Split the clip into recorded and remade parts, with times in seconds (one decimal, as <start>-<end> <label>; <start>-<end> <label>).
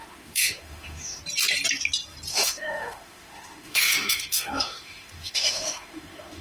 0.0-1.2 remade; 1.2-2.3 recorded; 2.3-6.4 remade